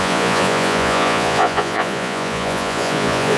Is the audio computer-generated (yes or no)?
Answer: yes